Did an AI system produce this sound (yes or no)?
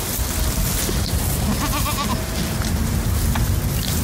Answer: no